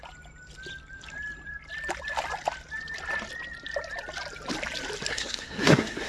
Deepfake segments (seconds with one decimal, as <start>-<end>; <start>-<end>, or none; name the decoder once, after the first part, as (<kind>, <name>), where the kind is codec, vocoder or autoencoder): 5.1-6.1 (codec, SNAC)